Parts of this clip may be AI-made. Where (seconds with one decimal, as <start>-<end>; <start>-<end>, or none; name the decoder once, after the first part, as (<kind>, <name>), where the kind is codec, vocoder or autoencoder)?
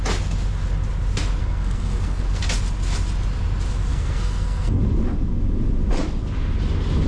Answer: 1.4-2.4 (codec, SNAC); 3.9-4.8